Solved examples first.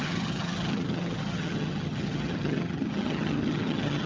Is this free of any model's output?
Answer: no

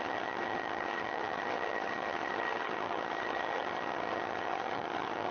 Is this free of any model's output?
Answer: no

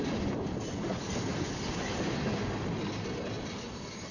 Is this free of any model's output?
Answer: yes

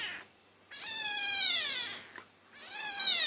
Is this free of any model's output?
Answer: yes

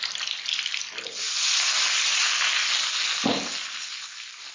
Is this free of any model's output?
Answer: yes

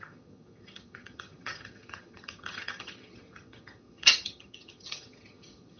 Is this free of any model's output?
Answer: no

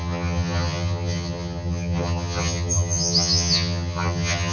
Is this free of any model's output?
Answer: no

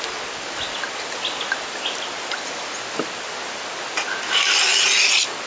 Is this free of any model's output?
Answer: yes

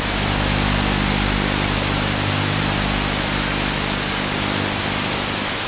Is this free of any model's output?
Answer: yes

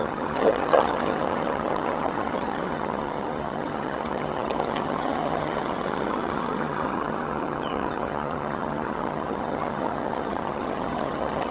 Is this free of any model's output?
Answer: no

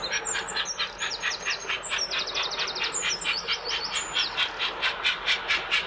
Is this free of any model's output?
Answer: yes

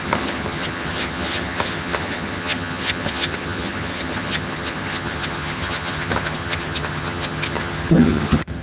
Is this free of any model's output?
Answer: no